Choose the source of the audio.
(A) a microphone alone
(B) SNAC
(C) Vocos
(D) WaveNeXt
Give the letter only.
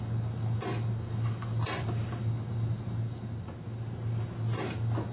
A